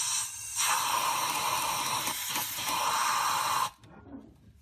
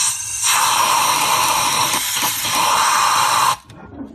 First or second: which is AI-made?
second